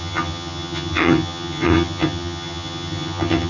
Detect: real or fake fake